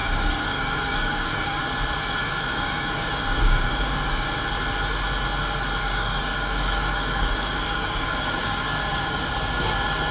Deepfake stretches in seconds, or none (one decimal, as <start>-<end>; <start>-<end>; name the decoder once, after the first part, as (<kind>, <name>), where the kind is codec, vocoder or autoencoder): 0.0-1.6 (codec, DAC); 2.2-4.3; 5.8-9.3